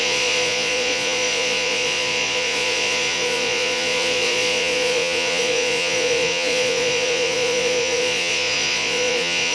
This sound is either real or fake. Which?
fake